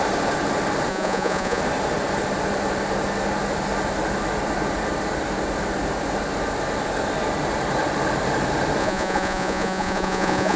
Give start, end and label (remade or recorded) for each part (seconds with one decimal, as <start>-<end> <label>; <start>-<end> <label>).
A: 0.0-0.9 recorded; 0.9-1.6 remade; 1.6-8.8 recorded; 8.8-10.6 remade